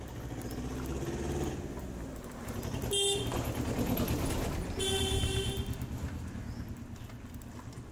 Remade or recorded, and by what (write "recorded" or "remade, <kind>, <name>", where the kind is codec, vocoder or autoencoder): recorded